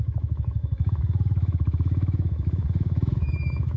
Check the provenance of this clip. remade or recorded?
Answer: remade